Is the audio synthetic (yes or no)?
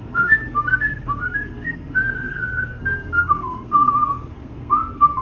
yes